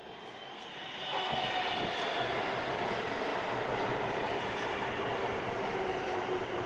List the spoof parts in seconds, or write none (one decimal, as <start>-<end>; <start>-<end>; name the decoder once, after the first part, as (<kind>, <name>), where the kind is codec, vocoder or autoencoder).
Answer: 0.5-1.4 (codec, SNAC)